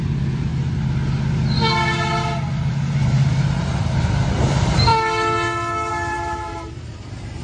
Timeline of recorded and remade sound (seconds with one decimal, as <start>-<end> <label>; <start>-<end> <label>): 0.0-0.5 remade; 0.5-2.5 recorded; 2.5-4.9 remade; 4.9-5.9 recorded; 5.9-7.4 remade